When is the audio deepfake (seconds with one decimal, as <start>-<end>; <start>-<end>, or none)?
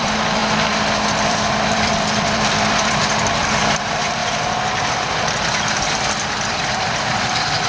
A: 0.0-0.4; 1.1-4.2; 5.6-7.7